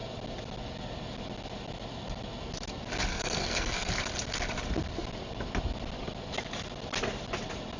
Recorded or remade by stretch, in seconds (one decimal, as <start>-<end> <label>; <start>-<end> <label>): 0.0-3.1 recorded; 3.1-3.9 remade; 3.9-7.8 recorded